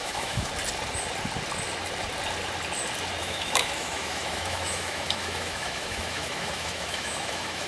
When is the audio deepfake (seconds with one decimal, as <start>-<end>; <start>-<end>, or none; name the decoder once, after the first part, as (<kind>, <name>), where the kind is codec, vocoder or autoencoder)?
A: 0.0-0.5 (autoencoder, DAC-VAE); 3.2-7.7